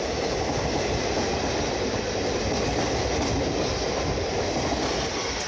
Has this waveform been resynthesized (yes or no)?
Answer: no